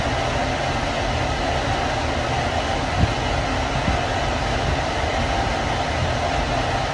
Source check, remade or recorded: recorded